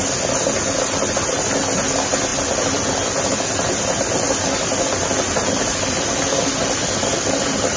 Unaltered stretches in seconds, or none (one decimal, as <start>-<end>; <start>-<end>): 0.0-7.8